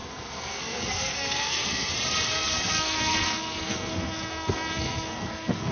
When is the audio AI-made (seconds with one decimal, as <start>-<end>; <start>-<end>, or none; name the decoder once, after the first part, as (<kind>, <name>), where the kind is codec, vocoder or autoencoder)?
0.0-1.9 (codec, SNAC); 2.3-5.7